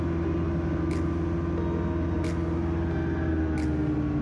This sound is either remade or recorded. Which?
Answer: recorded